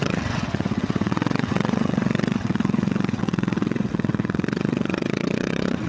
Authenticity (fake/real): fake